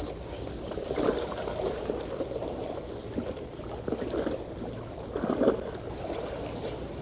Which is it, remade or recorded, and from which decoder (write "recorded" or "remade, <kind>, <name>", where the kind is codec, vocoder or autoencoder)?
recorded